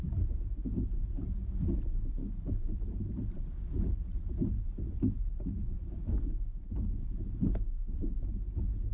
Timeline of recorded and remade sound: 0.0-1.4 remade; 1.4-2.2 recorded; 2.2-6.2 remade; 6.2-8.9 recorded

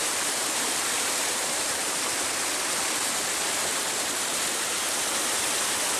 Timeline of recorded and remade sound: 0.0-2.2 remade; 2.2-6.0 recorded

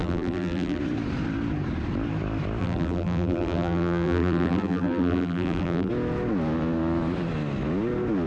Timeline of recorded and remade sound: 0.0-0.8 remade; 0.8-2.6 recorded; 2.6-5.9 remade; 5.9-8.3 recorded